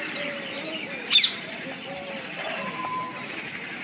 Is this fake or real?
fake